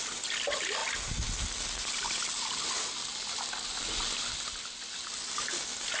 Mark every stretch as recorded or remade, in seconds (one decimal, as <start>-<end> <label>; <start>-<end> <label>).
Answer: 0.0-6.0 recorded